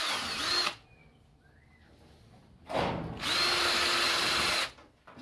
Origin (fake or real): real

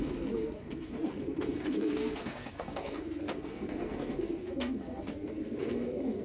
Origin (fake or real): fake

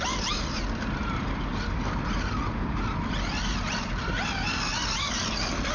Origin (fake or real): real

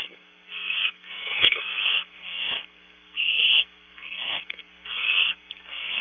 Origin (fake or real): fake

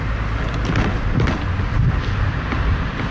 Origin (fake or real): real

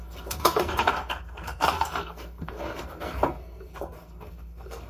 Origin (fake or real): fake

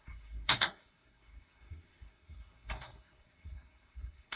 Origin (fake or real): fake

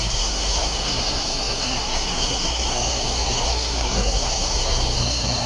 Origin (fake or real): fake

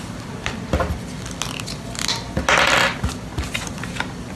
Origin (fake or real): real